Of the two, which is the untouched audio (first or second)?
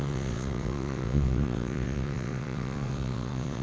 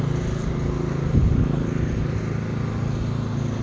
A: second